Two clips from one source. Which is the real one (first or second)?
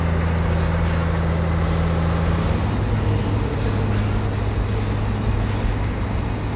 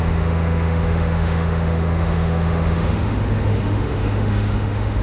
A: first